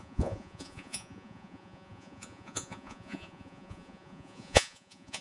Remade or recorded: remade